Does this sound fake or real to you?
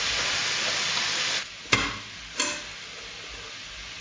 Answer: real